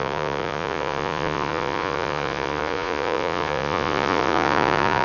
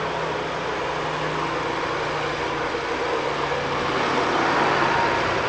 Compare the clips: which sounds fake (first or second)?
first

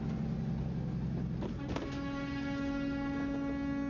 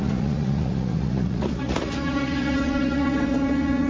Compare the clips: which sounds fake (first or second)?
second